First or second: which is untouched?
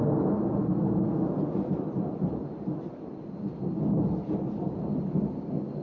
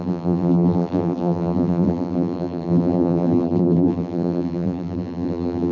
first